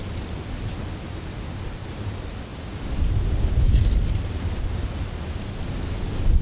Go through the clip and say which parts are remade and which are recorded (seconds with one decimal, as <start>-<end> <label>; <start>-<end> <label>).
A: 0.0-6.4 recorded